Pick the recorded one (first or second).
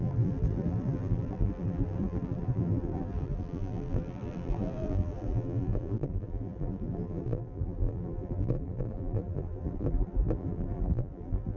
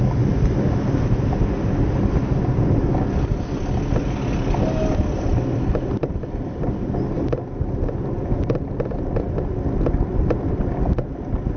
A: second